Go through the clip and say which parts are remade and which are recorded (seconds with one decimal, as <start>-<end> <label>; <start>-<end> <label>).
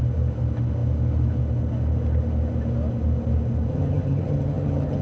0.0-3.7 recorded; 3.7-5.0 remade